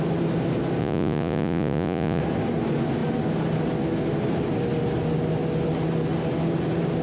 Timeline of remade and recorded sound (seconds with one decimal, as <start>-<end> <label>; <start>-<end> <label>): 0.0-0.8 recorded; 0.8-2.2 remade; 2.2-7.0 recorded